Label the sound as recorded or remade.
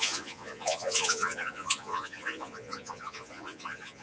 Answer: remade